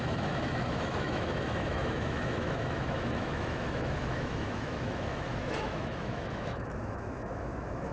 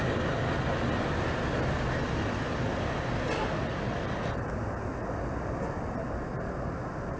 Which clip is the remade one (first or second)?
first